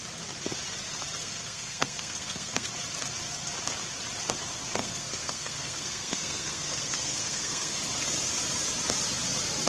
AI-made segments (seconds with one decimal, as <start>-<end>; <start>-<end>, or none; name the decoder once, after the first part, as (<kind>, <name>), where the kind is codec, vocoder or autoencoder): 1.2-2.7 (codec, SNAC); 4.8-7.8